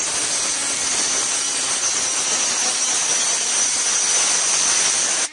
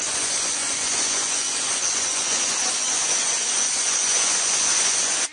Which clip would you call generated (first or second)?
second